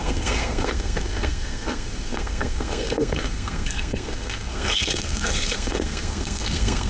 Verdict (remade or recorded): remade